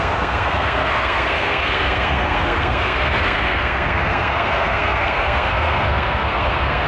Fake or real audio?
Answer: fake